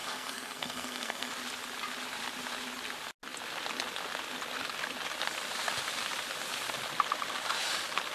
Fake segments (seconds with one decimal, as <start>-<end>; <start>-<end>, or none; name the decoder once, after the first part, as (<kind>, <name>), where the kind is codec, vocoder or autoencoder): 0.0-1.3 (codec, SNAC)